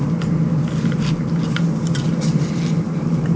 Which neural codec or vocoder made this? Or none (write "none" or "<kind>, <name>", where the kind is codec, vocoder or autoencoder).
none